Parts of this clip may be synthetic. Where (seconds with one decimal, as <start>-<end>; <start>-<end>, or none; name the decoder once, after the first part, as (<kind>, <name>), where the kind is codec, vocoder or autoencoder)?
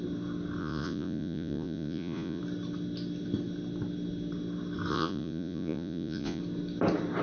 0.6-2.4 (vocoder, Vocos); 4.9-6.4